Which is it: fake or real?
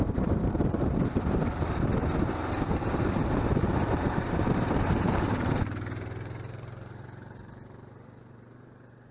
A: fake